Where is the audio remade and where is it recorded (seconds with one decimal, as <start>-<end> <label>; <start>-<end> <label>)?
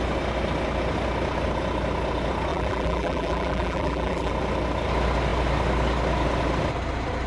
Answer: 0.0-2.5 recorded; 2.5-4.3 remade; 4.3-7.3 recorded